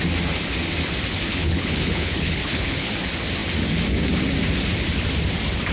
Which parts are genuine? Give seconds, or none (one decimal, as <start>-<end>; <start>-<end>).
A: 0.0-1.3; 2.9-5.7